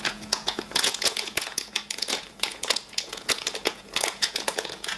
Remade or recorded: remade